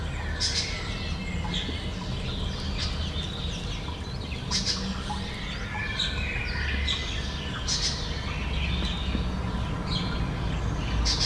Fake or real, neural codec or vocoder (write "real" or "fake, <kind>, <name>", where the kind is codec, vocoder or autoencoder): real